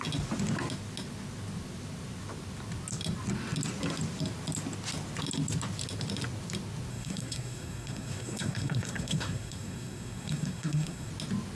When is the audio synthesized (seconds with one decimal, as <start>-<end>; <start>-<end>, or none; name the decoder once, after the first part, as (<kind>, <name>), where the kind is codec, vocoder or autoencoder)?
6.9-11.1 (codec, SNAC)